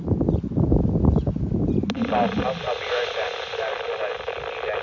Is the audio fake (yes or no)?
no